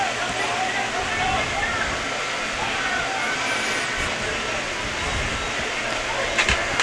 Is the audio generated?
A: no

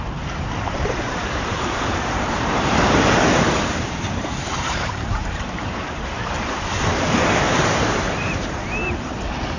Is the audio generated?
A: yes